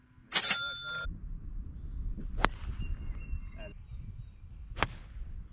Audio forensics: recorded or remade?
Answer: recorded